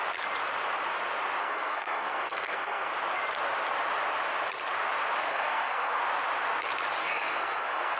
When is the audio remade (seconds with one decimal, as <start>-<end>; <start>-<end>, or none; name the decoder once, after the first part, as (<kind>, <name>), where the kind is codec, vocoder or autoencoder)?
1.4-2.9 (codec, SNAC); 5.3-6.0; 7.0-8.0